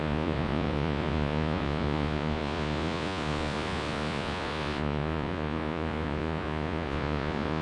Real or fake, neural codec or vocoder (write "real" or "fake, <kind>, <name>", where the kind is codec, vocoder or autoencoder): fake, vocoder, Vocos